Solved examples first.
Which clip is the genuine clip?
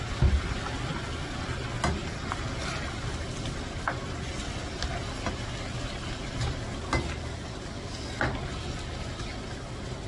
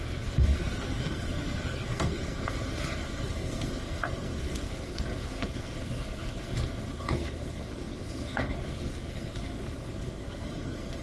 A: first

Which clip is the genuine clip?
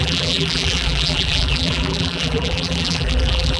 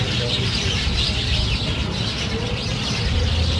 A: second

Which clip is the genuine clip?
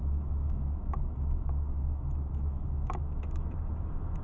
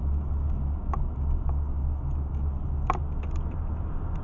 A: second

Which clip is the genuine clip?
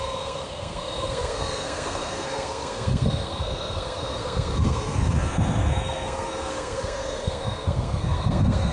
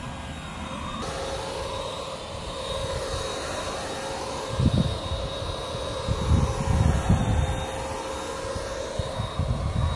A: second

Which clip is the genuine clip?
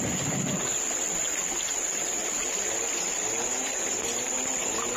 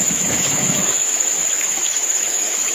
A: first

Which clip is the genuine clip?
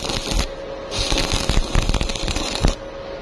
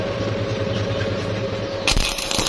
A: first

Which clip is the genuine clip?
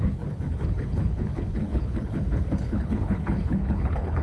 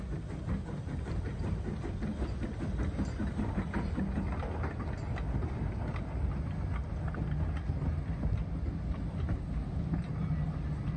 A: second